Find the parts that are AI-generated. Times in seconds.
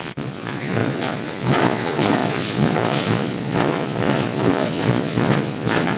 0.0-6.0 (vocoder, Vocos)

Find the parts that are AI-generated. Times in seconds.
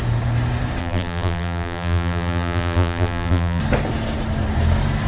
0.8-3.6 (vocoder, BigVGAN v2)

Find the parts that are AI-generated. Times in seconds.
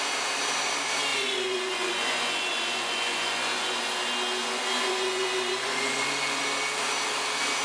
1.1-3.8 (vocoder, Vocos); 4.4-6.4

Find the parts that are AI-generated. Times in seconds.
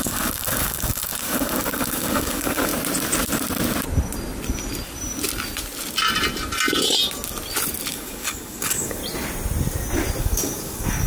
0.0-2.7 (codec, DAC); 7.9-9.0; 10.2-11.1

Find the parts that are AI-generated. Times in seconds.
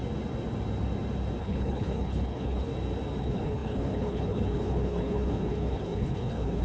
1.4-2.7 (codec, HILCodec); 3.2-6.6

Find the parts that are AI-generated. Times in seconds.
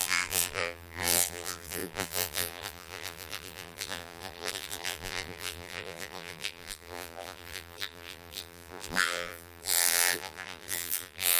0.0-11.4 (vocoder, BigVGAN v2)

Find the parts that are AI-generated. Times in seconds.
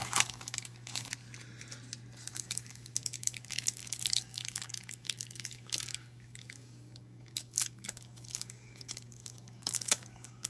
0.0-1.1 (codec, DAC); 2.3-10.5